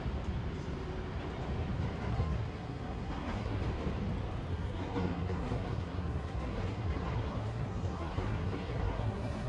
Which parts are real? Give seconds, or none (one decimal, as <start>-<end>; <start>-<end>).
0.0-2.1; 3.6-4.5